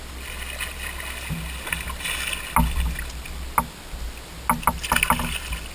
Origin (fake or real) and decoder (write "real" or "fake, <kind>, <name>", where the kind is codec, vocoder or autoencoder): real